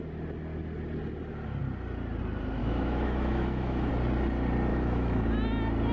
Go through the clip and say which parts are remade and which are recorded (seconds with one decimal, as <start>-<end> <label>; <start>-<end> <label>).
0.0-2.6 recorded; 2.6-3.9 remade; 3.9-4.7 recorded; 4.7-5.3 remade; 5.3-5.9 recorded